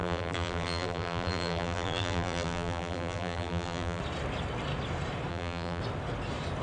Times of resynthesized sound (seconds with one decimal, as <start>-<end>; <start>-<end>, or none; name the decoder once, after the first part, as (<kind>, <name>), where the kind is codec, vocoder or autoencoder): 0.0-4.0 (vocoder, BigVGAN v2); 5.3-5.8